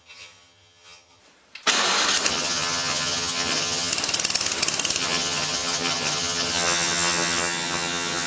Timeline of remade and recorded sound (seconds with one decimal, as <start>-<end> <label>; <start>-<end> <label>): 0.0-1.2 remade; 1.2-2.3 recorded; 2.3-3.9 remade; 3.9-5.0 recorded; 5.0-8.3 remade